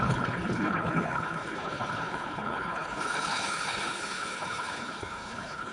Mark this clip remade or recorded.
remade